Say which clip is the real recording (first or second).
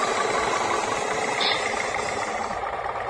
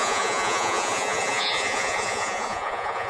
first